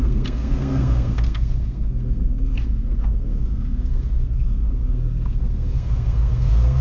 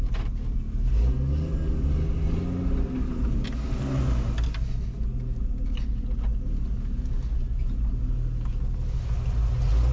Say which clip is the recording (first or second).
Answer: second